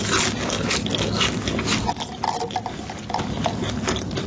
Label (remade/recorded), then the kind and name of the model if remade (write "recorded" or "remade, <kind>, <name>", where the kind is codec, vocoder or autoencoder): recorded